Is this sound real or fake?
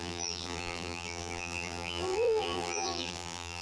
fake